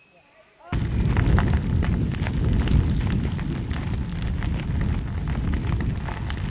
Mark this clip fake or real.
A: real